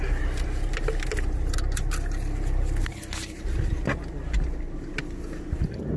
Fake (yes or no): no